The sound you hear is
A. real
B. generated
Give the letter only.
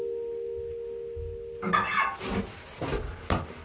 A